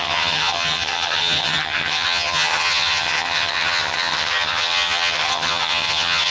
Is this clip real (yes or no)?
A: no